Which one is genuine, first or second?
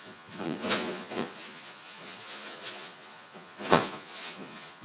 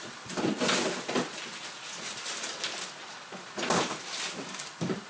second